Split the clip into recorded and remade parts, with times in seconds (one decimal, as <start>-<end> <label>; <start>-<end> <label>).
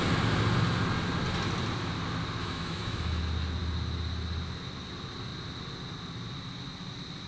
0.0-2.4 recorded; 2.4-3.2 remade; 3.2-7.3 recorded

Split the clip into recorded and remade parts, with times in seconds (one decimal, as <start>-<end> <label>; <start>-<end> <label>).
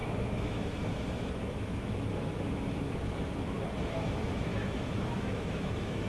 0.0-6.1 remade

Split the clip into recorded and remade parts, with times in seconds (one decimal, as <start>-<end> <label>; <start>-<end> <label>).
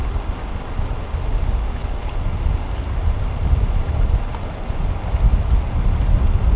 0.0-6.6 recorded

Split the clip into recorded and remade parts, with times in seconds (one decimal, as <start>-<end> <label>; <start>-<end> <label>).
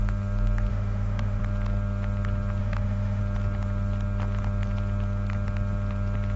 0.0-0.7 recorded; 0.7-1.4 remade; 1.4-2.6 recorded; 2.6-3.2 remade; 3.2-6.4 recorded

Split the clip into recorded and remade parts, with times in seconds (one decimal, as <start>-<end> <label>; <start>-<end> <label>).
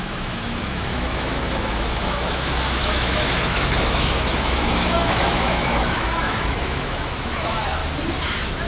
0.0-7.8 remade; 7.8-8.7 recorded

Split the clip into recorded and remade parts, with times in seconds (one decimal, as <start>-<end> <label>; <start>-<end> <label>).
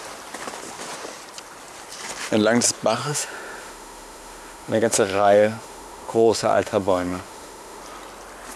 0.0-3.0 recorded; 3.0-7.8 remade; 7.8-8.6 recorded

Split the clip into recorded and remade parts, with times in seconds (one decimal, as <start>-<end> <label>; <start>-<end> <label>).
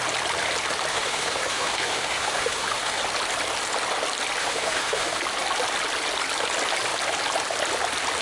0.0-0.9 recorded; 0.9-3.0 remade; 3.0-4.4 recorded; 4.4-5.2 remade; 5.2-8.2 recorded